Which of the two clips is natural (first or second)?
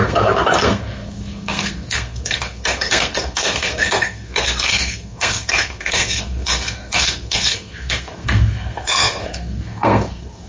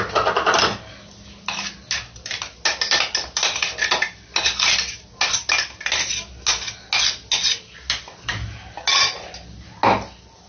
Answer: second